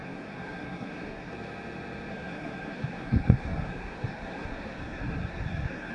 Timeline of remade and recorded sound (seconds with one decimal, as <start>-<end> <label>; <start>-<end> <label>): 0.0-1.3 remade; 1.3-2.1 recorded; 2.1-5.9 remade